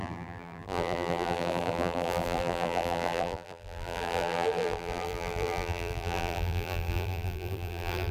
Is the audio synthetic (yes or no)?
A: yes